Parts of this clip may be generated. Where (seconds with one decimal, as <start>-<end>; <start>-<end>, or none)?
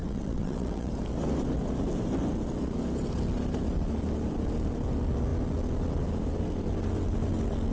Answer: 0.0-0.9